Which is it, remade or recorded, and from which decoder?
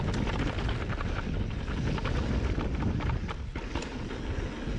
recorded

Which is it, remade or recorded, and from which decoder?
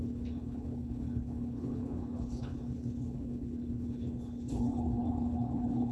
remade, codec, HILCodec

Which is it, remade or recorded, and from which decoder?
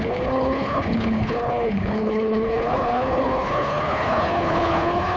remade, codec, HILCodec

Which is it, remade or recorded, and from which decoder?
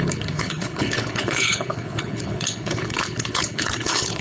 remade, codec, HILCodec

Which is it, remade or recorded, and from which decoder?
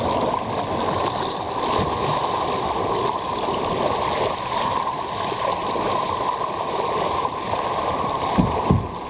recorded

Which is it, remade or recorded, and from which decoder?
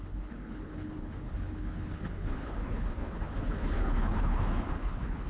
remade, codec, HILCodec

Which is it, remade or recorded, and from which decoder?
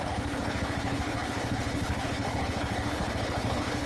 remade, codec, HILCodec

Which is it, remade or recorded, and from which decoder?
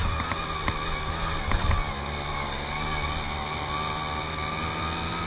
recorded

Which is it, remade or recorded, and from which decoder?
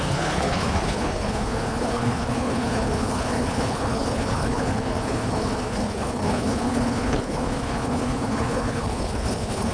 remade, codec, HILCodec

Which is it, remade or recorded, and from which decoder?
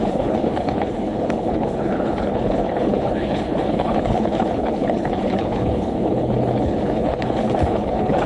remade, codec, HILCodec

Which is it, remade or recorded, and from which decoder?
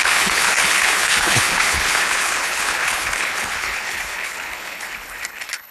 remade, codec, HILCodec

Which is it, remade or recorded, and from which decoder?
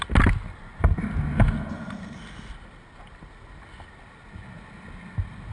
recorded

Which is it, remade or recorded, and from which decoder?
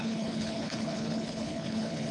remade, codec, HILCodec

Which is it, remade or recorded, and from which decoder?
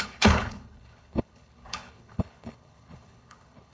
remade, codec, HILCodec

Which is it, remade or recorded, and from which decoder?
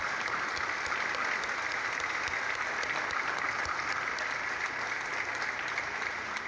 recorded